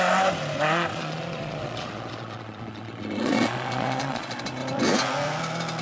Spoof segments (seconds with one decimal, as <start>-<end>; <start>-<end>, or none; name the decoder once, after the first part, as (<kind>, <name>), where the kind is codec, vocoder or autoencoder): 0.9-4.4 (vocoder, Vocos)